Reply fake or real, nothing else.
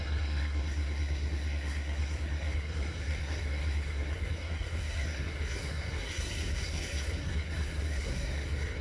fake